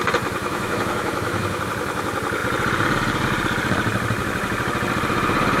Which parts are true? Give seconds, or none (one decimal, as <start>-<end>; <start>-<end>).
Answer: 0.0-0.4; 1.6-5.6